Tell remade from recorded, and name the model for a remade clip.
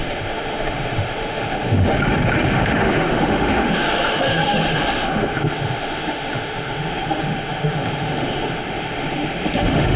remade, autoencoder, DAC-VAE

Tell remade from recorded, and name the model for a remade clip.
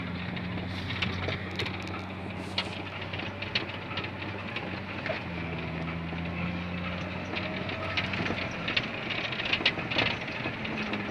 recorded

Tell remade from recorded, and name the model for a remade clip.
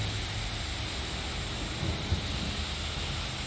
recorded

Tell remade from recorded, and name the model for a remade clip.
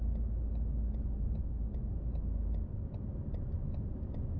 recorded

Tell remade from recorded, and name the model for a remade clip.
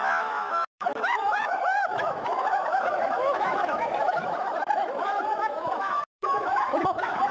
remade, autoencoder, DAC-VAE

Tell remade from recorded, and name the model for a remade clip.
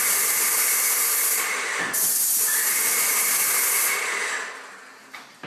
recorded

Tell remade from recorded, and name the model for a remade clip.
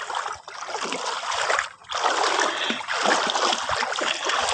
recorded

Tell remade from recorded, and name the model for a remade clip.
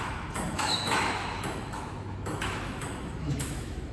remade, autoencoder, DAC-VAE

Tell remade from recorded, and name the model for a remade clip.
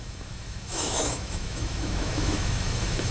remade, autoencoder, DAC-VAE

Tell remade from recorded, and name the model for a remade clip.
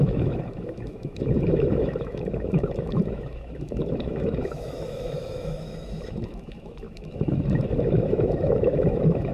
remade, autoencoder, DAC-VAE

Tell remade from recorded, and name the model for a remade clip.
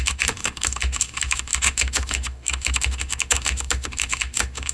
remade, autoencoder, DAC-VAE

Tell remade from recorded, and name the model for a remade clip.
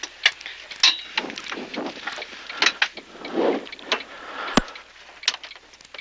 recorded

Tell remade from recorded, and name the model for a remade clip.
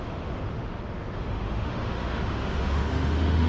remade, autoencoder, DAC-VAE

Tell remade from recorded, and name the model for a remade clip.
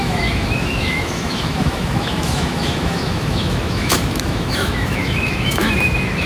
remade, autoencoder, DAC-VAE